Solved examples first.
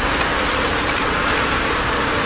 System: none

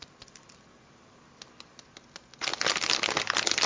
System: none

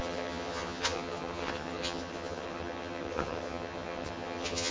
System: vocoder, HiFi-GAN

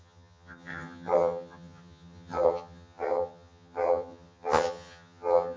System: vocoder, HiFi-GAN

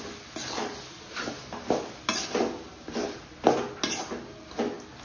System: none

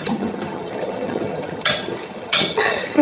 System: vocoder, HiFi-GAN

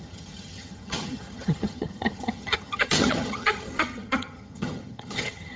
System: vocoder, HiFi-GAN